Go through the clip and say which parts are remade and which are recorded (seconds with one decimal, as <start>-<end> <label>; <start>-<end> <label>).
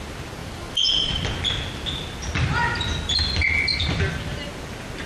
0.0-0.4 recorded; 0.4-1.5 remade; 1.5-5.1 recorded